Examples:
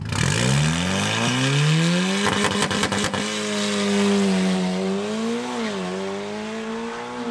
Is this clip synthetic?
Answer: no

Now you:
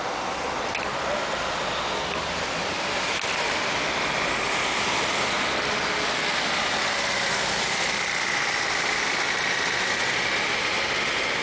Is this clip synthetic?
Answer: no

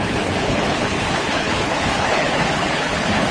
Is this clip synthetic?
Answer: yes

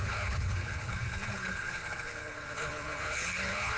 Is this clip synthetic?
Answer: yes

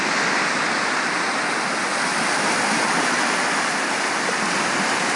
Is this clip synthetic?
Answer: no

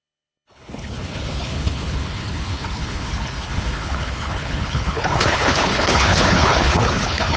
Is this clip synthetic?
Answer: yes